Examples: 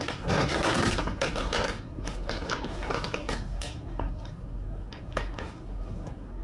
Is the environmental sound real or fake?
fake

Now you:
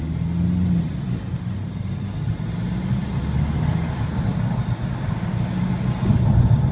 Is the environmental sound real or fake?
real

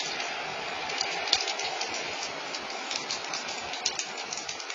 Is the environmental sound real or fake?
real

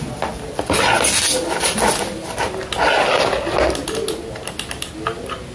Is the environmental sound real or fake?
real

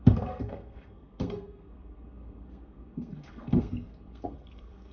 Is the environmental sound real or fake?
fake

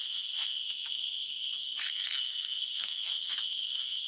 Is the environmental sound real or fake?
fake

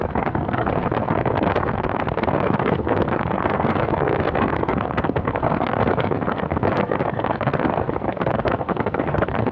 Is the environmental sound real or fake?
fake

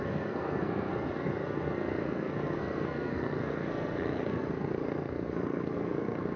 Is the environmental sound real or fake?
fake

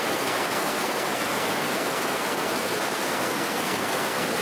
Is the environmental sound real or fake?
fake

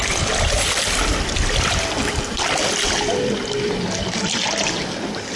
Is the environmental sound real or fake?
real